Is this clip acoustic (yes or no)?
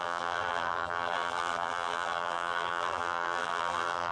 no